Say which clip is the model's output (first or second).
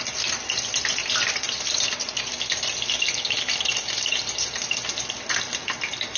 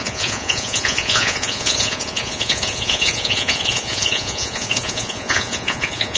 second